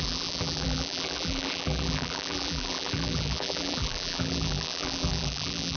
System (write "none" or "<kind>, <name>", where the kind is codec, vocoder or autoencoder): vocoder, BigVGAN v2